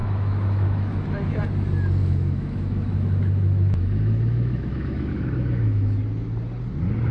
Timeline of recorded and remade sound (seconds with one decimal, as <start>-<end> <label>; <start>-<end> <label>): 0.0-1.4 remade; 1.4-2.0 recorded; 2.0-6.0 remade; 6.0-7.1 recorded